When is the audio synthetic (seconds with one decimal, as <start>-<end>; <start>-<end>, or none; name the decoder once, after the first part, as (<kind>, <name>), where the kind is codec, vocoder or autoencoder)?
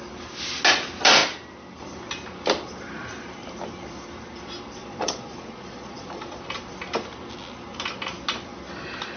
4.8-6.4 (vocoder, Vocos)